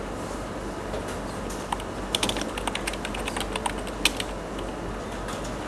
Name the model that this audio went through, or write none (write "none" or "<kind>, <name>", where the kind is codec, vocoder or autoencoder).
none